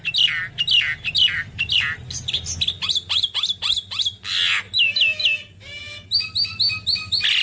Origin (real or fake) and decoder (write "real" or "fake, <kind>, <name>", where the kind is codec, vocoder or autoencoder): real